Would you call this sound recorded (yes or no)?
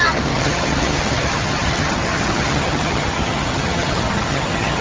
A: no